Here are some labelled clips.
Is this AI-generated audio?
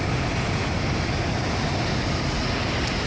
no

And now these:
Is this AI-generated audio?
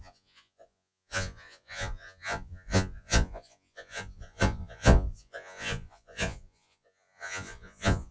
yes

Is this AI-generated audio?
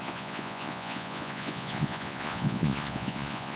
yes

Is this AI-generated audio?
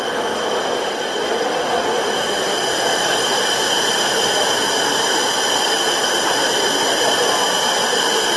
no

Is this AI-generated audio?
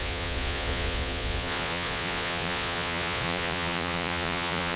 yes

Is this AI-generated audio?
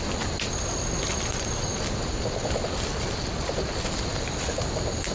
no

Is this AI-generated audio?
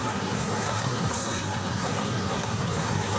yes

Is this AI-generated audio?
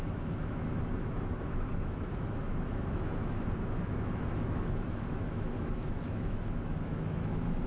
yes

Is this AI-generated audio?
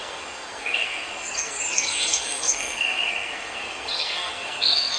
yes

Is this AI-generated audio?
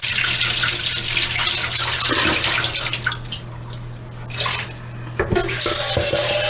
no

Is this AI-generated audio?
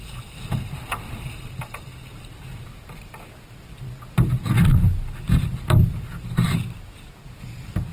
no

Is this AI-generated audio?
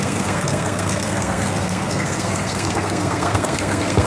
yes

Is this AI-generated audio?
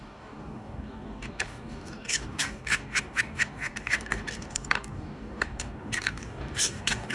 yes